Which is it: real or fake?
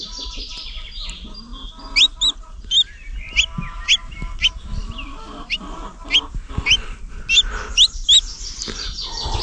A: real